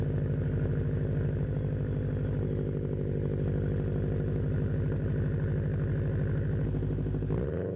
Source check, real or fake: real